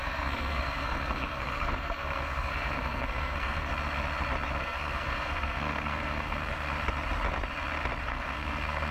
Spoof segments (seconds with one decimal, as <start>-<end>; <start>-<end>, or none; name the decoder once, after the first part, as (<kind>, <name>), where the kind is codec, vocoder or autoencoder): 0.0-3.7 (codec, SNAC); 4.6-6.7; 8.0-8.9